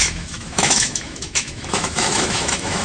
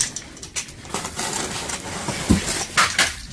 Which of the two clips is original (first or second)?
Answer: second